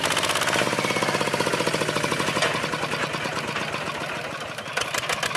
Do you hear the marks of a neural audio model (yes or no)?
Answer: no